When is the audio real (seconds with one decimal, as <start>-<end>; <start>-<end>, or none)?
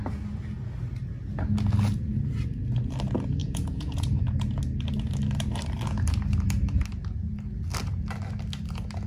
0.0-3.4; 4.6-9.1